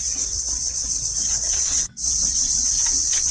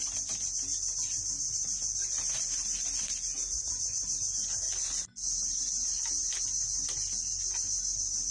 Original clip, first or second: second